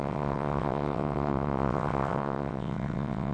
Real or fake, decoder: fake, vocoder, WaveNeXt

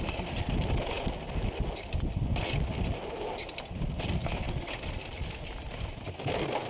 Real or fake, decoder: real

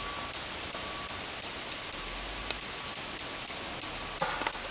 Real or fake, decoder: real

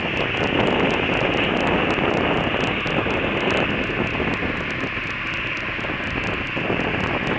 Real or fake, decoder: real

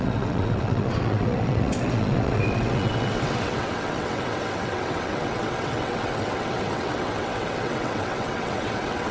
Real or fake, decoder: fake, vocoder, WaveNeXt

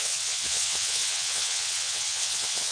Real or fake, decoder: fake, vocoder, WaveNeXt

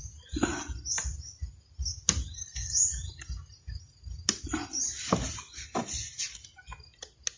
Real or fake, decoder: real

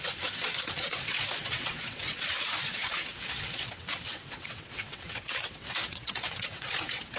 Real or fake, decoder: fake, vocoder, WaveNeXt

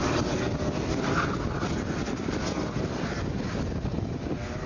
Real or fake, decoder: real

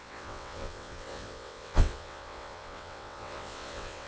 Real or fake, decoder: fake, vocoder, WaveNeXt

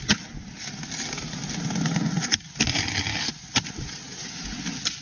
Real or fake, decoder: real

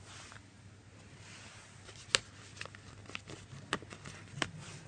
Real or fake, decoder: real